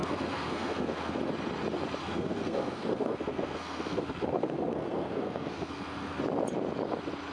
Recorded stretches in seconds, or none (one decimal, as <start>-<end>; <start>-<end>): 1.2-2.0; 6.2-7.3